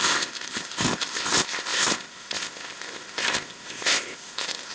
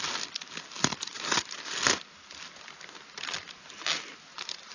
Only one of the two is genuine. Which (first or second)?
second